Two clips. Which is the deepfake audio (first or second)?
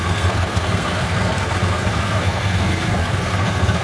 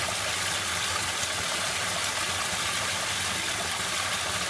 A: first